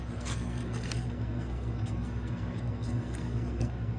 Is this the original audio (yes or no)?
no